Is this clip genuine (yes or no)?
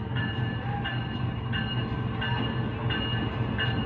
yes